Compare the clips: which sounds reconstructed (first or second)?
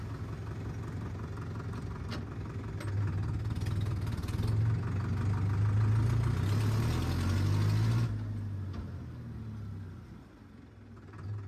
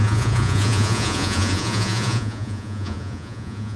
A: second